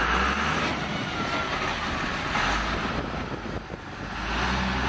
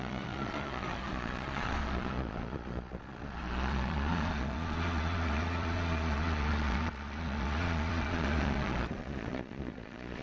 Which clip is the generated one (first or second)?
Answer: second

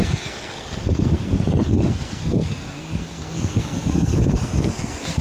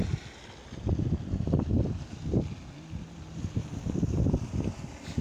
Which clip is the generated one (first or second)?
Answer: first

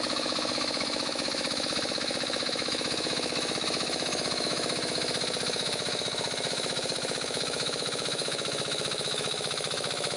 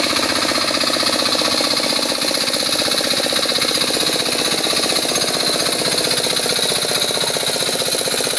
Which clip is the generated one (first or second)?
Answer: first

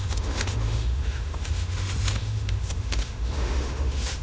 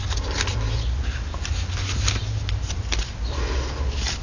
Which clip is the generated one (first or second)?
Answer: first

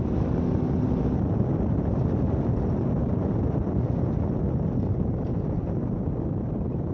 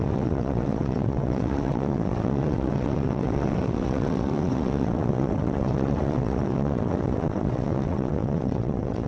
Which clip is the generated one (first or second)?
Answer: second